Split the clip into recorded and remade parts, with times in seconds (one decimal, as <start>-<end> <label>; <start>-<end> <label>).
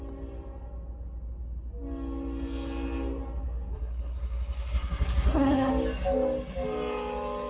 0.0-3.7 recorded; 3.7-5.7 remade; 5.7-7.5 recorded